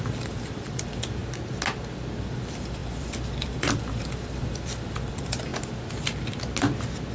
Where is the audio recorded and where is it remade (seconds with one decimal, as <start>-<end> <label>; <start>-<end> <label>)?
0.0-1.2 remade; 1.2-2.2 recorded; 2.2-5.5 remade; 5.5-7.1 recorded